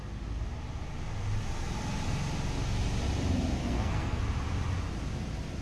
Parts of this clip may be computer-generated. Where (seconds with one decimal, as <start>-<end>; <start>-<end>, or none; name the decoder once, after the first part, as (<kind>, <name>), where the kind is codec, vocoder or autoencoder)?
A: 3.6-4.2 (codec, SNAC)